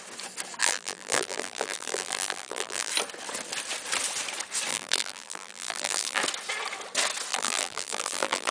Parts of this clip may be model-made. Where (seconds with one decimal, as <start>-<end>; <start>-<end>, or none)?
0.6-2.9; 4.7-6.2; 7.3-8.5